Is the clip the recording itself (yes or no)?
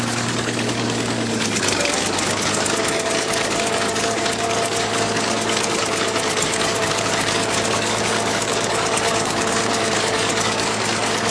no